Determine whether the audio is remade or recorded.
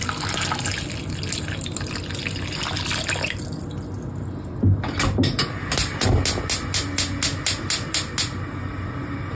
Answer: recorded